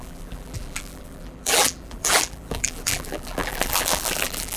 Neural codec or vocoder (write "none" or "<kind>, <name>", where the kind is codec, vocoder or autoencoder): vocoder, BigVGAN v2